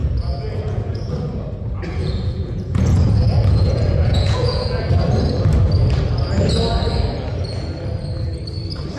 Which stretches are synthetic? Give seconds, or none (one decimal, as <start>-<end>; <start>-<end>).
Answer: 0.0-1.1; 2.0-4.9